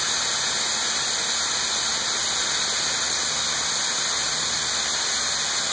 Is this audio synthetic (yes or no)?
no